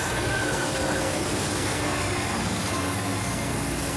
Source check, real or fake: fake